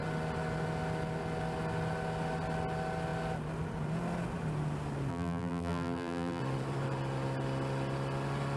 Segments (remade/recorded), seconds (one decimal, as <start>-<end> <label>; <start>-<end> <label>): 0.0-5.1 recorded; 5.1-6.4 remade; 6.4-8.6 recorded